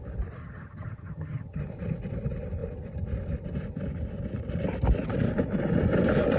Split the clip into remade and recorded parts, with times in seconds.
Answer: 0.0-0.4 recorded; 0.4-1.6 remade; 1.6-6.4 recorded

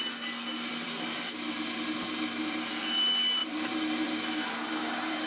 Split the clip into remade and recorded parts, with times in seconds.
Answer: 0.0-3.4 recorded; 3.4-5.3 remade

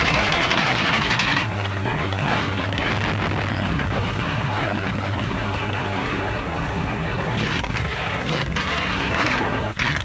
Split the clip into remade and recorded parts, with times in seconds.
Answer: 0.0-2.9 remade; 2.9-3.5 recorded; 3.5-10.0 remade

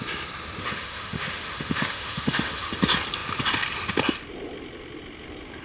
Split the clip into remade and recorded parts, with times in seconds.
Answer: 0.0-0.6 recorded; 0.6-2.7 remade; 2.7-5.6 recorded

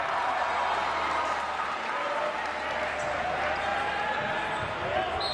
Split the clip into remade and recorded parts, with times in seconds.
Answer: 0.0-5.3 recorded

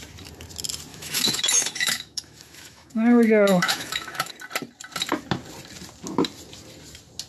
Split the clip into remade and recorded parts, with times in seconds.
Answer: 0.0-0.9 recorded; 0.9-4.3 remade; 4.3-7.3 recorded

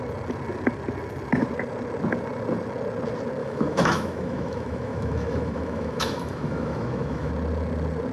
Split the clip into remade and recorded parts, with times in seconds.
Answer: 0.0-3.4 recorded; 3.4-7.3 remade; 7.3-8.1 recorded